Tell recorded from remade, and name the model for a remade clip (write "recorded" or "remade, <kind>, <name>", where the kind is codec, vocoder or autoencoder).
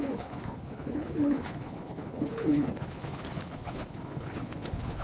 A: remade, codec, HILCodec